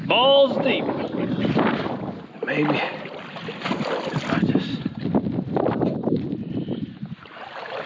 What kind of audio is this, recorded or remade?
recorded